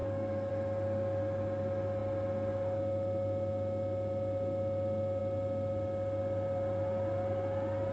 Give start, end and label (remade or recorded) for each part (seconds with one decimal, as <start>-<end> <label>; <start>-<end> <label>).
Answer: 0.0-0.5 remade; 0.5-7.9 recorded